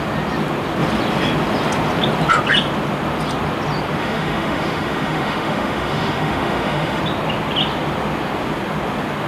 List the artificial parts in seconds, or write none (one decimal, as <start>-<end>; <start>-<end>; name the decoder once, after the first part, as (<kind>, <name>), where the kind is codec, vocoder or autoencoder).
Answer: 4.0-7.0 (autoencoder, DAC-VAE)